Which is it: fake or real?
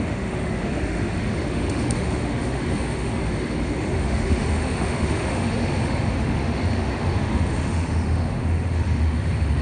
fake